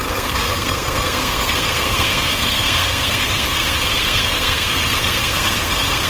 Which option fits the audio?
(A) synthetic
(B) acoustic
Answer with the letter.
A